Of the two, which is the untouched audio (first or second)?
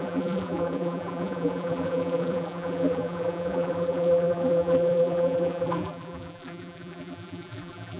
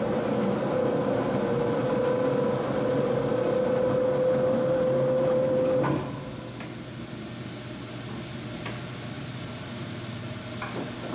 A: second